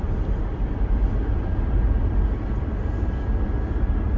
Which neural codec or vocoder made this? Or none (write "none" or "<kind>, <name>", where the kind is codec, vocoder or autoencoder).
none